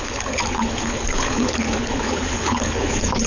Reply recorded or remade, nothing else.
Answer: remade